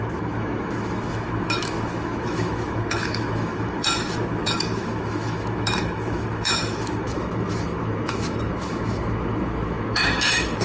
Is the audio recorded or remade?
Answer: remade